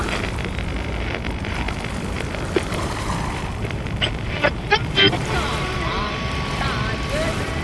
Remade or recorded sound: recorded